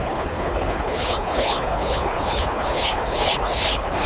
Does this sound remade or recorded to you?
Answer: remade